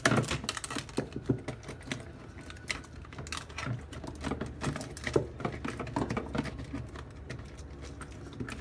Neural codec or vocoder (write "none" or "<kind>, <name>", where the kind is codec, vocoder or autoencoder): none